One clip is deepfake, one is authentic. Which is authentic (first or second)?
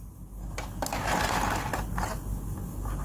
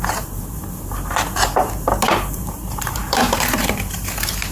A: first